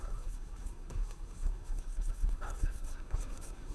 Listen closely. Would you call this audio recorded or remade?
remade